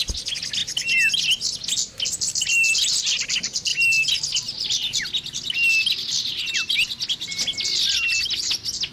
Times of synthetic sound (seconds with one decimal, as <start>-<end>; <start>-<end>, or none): none